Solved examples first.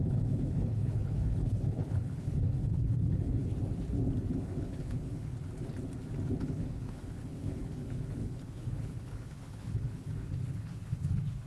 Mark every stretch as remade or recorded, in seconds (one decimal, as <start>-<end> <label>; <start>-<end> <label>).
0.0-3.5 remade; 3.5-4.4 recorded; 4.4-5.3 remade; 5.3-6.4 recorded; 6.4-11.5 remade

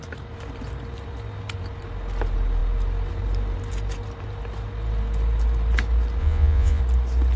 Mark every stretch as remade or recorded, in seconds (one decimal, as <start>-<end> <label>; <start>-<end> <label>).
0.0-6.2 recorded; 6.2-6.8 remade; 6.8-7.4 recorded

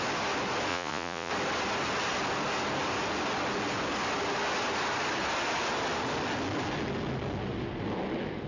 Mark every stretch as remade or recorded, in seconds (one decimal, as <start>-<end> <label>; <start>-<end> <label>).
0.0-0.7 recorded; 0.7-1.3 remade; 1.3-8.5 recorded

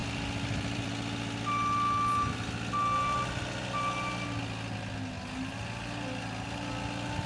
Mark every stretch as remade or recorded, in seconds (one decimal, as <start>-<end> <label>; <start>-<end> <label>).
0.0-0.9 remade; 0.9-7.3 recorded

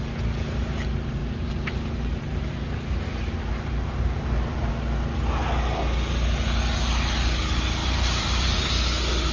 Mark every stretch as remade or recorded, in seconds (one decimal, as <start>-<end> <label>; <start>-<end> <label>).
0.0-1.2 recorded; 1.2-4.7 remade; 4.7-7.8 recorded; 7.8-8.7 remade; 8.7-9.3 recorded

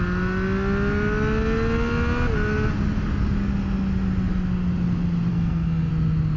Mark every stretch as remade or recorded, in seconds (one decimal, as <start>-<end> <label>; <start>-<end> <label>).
0.0-5.3 recorded; 5.3-5.9 remade; 5.9-6.4 recorded

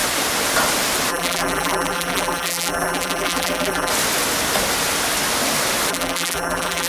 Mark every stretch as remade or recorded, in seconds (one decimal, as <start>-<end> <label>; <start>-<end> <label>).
0.0-1.1 recorded; 1.1-3.9 remade; 3.9-5.9 recorded; 5.9-6.9 remade

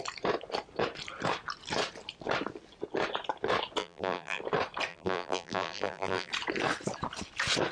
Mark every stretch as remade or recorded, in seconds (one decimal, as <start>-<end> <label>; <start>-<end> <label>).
0.0-3.8 recorded; 3.8-4.4 remade; 4.4-4.9 recorded; 4.9-6.3 remade; 6.3-7.7 recorded